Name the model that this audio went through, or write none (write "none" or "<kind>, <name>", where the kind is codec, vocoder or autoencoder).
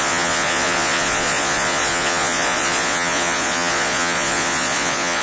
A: vocoder, Vocos